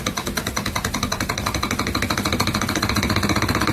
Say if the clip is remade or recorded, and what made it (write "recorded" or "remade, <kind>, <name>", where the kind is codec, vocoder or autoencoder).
recorded